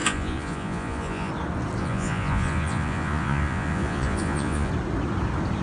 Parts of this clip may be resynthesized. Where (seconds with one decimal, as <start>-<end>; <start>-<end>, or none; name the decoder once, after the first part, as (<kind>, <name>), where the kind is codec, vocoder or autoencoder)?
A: 0.0-1.3 (vocoder, Vocos); 1.8-4.7